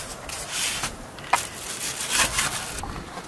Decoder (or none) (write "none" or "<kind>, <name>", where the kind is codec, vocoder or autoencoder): none